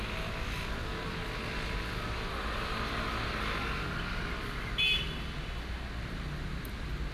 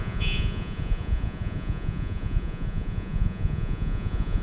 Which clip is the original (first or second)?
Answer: first